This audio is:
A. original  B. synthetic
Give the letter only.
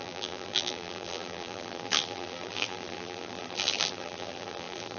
B